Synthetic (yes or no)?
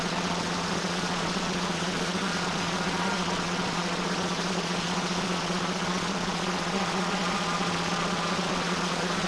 yes